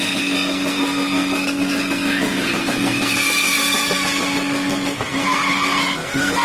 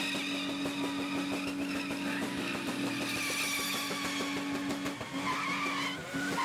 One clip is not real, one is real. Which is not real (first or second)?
first